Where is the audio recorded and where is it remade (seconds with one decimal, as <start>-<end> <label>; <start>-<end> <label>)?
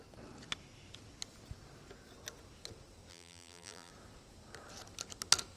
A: 0.0-3.1 recorded; 3.1-3.9 remade; 3.9-5.6 recorded